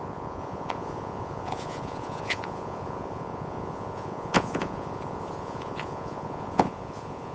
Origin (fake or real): fake